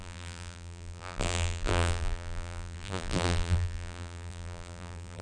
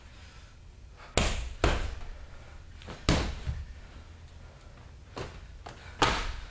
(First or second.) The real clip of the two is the second